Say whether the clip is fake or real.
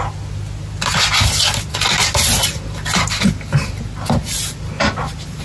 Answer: real